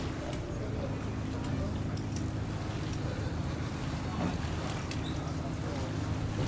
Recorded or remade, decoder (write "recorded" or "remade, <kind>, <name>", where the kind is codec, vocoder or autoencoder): recorded